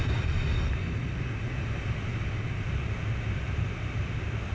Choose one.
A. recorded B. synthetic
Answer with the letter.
A